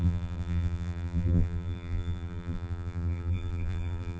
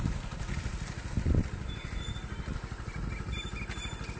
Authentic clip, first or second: second